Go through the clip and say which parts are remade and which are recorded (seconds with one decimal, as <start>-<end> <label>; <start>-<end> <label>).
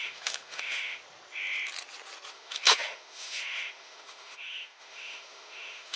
0.0-1.0 remade; 1.0-2.3 recorded; 2.3-6.0 remade